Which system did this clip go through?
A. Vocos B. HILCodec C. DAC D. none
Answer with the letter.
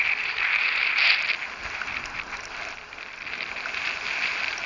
D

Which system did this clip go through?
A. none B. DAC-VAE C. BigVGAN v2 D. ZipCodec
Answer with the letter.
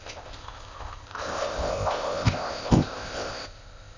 D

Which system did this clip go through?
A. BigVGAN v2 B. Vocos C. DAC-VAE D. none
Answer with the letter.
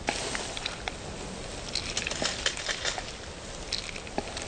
D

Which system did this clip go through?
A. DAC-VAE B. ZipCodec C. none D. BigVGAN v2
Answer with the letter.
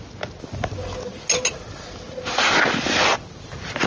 C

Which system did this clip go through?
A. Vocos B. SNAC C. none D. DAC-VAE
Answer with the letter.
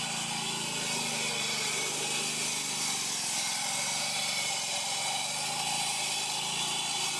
C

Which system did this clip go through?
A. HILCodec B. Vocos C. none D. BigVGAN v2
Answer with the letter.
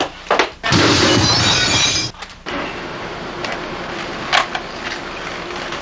C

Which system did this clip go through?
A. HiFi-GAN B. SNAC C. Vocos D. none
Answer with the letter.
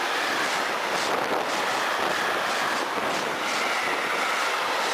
D